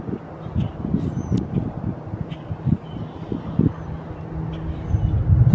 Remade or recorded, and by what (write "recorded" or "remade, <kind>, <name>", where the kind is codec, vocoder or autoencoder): recorded